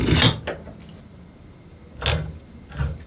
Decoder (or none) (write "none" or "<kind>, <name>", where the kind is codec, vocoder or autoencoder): none